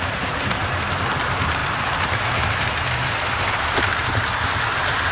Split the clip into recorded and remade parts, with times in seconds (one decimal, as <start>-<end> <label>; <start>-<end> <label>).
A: 0.0-0.6 remade; 0.6-1.2 recorded; 1.2-1.6 remade; 1.6-3.8 recorded; 3.8-5.1 remade